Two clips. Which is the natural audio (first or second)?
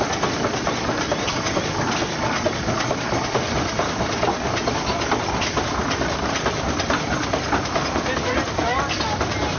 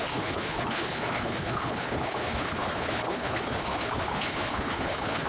first